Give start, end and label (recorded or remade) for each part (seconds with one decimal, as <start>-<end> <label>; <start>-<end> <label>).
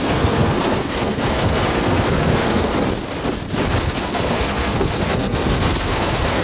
0.0-2.7 remade; 2.7-3.8 recorded; 3.8-6.4 remade